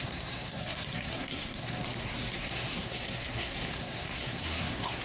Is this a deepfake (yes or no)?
yes